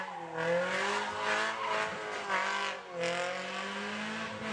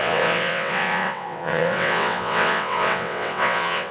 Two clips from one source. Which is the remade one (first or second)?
second